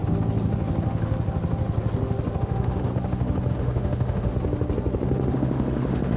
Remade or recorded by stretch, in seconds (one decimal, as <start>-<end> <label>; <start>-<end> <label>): 0.0-2.4 recorded; 2.4-2.9 remade; 2.9-3.5 recorded; 3.5-4.3 remade; 4.3-5.3 recorded; 5.3-6.2 remade